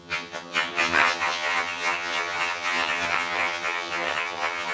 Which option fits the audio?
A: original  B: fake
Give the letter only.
B